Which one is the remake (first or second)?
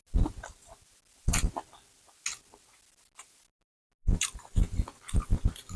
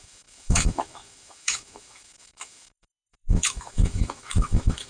second